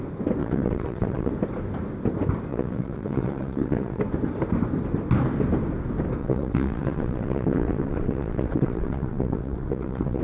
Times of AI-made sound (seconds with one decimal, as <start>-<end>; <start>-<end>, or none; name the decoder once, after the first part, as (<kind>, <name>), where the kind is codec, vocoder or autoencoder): 0.4-1.3 (vocoder, WaveNeXt); 2.5-4.0; 6.2-10.2